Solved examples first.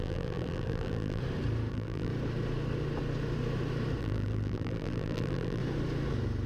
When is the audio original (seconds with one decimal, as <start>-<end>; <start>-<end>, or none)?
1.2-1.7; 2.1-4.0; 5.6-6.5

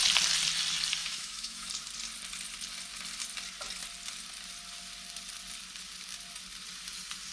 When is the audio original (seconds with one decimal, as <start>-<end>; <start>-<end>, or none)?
0.0-1.0; 1.7-7.3

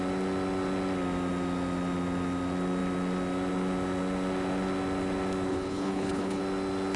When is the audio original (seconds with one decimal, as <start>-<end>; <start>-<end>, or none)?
0.0-5.5; 6.4-7.0

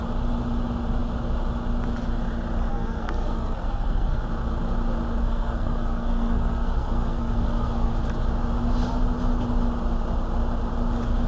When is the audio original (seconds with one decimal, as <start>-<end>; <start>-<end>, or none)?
0.0-2.7; 4.2-5.2; 7.9-11.3